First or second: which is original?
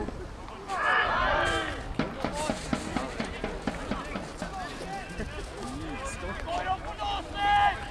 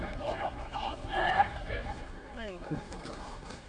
first